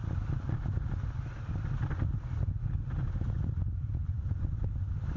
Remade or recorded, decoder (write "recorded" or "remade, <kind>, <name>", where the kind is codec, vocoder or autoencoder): recorded